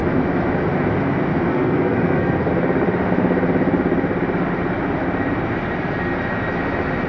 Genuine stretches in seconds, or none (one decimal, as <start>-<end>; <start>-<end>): 0.0-1.5; 2.5-7.1